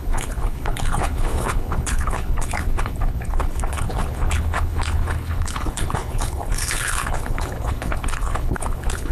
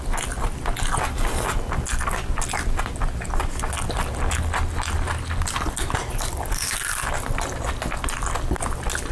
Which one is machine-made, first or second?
first